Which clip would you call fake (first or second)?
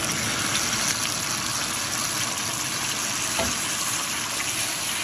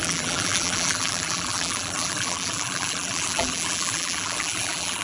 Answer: second